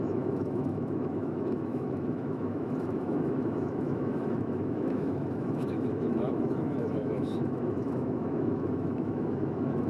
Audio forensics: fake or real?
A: fake